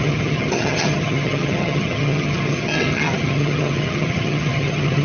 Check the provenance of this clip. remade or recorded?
remade